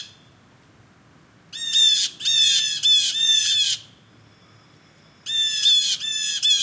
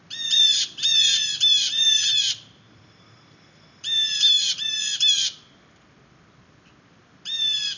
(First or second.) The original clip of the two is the first